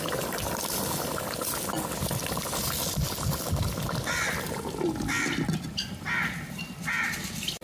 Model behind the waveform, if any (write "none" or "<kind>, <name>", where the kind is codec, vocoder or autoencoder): none